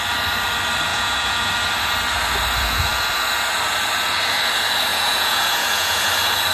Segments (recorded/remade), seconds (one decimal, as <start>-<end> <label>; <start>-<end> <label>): 0.0-0.9 recorded; 0.9-1.5 remade; 1.5-4.9 recorded; 4.9-6.1 remade; 6.1-6.5 recorded